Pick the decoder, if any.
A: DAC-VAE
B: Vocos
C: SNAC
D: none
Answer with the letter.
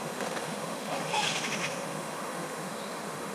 A